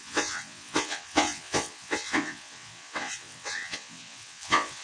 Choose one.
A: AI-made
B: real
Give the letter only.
A